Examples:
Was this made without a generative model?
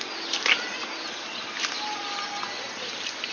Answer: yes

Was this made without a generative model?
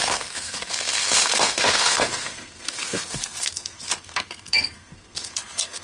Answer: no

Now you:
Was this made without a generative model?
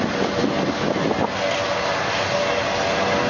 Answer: yes